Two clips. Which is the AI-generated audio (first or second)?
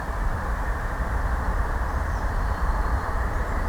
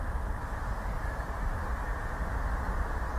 first